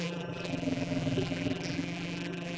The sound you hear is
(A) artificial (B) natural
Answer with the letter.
A